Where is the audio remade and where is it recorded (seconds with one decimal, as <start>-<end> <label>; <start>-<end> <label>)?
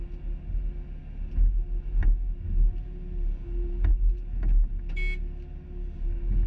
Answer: 0.0-6.5 recorded